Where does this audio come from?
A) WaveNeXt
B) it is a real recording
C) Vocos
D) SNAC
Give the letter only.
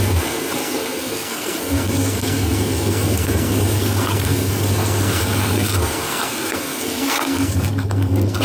D